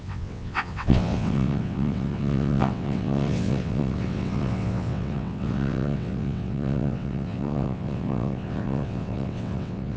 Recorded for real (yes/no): no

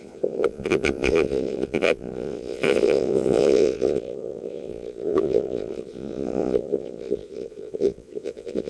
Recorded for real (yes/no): no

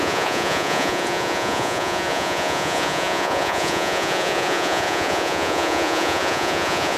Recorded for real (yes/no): no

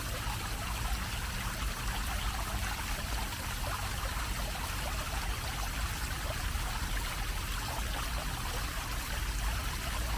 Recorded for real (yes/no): yes